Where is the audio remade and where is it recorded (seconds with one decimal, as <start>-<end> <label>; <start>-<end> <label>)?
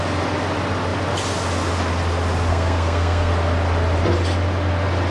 0.0-2.5 recorded; 2.5-3.3 remade; 3.3-5.1 recorded